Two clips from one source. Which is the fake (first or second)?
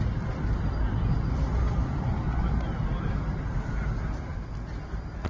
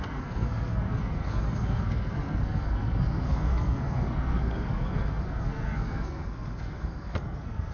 second